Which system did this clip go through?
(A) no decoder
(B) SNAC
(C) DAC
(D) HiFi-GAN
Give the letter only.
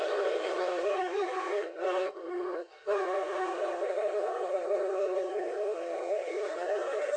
B